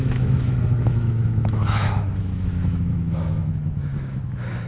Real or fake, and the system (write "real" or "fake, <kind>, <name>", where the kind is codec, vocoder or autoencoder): fake, autoencoder, DAC-VAE